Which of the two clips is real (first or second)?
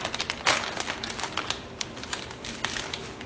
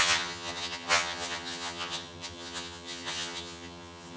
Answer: first